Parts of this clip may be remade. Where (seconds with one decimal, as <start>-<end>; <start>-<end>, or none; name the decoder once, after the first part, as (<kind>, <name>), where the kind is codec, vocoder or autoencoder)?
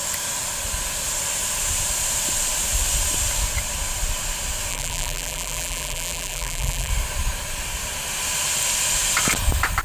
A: 4.7-6.9 (vocoder, BigVGAN v2)